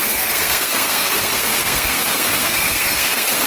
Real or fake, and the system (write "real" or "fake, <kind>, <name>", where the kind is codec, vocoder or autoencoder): fake, codec, SNAC